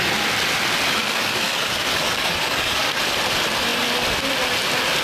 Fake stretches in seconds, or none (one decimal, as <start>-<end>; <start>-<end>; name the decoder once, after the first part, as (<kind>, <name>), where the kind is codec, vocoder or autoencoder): 1.0-3.0 (codec, DAC)